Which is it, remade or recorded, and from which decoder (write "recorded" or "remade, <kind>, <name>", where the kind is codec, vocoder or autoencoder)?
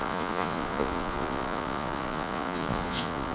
remade, vocoder, Vocos